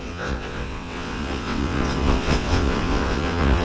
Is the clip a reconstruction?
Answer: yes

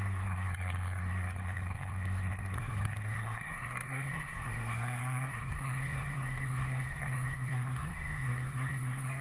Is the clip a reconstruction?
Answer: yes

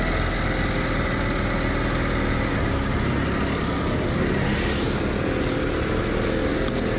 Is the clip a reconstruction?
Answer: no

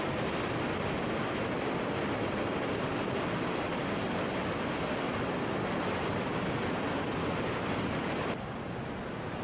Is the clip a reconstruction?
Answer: no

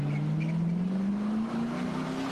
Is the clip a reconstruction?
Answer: no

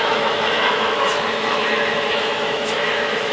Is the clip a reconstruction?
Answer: yes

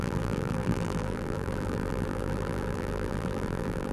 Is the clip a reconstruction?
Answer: yes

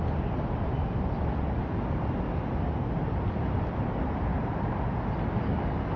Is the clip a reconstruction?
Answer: no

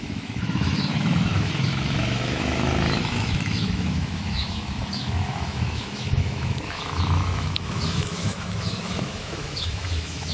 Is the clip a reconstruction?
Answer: yes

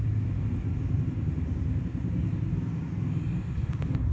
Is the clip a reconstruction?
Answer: no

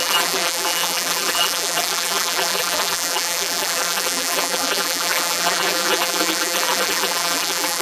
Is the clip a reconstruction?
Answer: yes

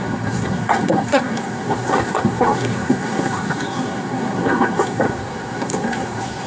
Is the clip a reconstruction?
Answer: yes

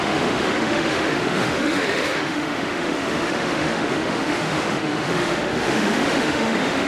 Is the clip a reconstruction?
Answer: yes